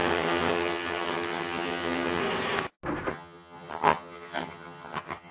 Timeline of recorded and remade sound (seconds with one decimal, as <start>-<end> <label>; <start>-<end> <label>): 0.0-2.2 remade; 2.2-3.1 recorded; 3.1-5.3 remade